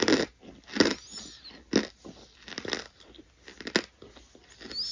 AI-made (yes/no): no